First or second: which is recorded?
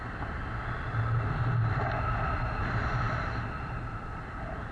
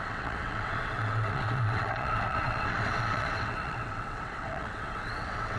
first